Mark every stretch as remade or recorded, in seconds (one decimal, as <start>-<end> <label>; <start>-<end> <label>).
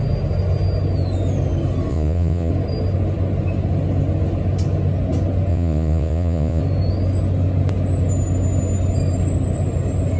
0.0-1.9 recorded; 1.9-2.5 remade; 2.5-5.5 recorded; 5.5-6.6 remade; 6.6-10.2 recorded